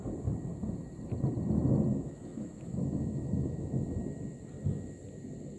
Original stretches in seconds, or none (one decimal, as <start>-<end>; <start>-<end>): 0.0-1.9; 3.7-5.6